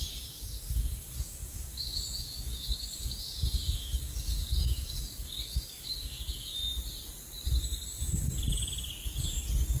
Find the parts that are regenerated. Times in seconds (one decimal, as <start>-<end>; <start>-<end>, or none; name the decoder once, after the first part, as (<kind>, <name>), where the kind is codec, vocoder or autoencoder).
0.0-6.6 (codec, DAC)